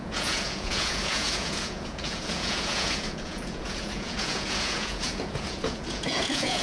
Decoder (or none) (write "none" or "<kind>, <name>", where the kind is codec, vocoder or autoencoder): vocoder, Vocos